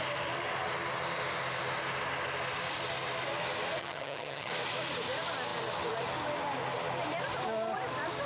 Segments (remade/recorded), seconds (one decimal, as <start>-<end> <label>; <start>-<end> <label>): 0.0-3.8 recorded; 3.8-4.5 remade; 4.5-8.3 recorded